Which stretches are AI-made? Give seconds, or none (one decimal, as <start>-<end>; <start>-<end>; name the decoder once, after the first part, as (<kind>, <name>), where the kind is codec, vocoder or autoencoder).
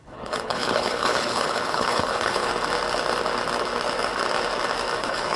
0.0-2.5 (codec, HILCodec); 5.0-5.4